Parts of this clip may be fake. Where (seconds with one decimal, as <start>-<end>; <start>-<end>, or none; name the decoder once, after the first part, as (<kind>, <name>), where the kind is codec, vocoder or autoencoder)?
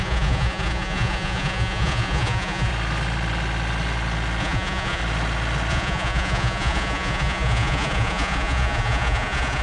0.0-2.7 (vocoder, Vocos); 4.4-5.0; 5.7-9.6